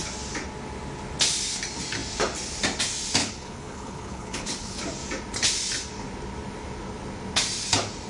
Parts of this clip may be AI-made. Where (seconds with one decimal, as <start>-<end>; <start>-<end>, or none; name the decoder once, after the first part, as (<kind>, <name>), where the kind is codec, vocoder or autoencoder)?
3.2-4.8 (codec, HILCodec)